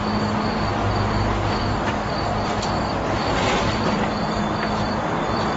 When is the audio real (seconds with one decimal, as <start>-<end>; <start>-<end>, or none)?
0.0-5.6